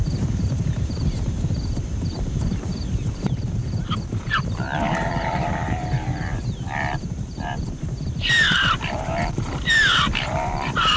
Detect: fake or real fake